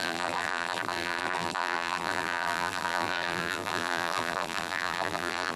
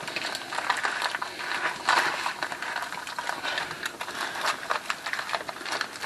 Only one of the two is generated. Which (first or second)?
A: first